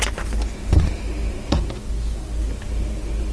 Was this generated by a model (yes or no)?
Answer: no